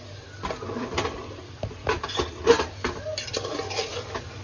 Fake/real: real